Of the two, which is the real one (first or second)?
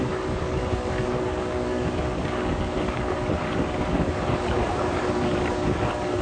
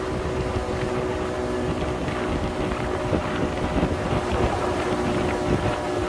second